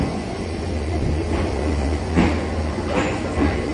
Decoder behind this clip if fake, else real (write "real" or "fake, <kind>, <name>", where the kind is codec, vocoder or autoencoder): fake, vocoder, Vocos